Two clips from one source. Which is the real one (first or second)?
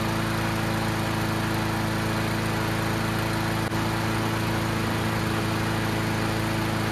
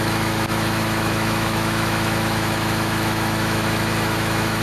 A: first